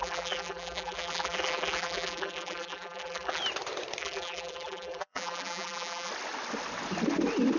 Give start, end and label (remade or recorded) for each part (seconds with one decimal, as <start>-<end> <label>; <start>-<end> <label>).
0.0-3.4 remade; 3.4-4.0 recorded; 4.0-6.1 remade; 6.1-7.6 recorded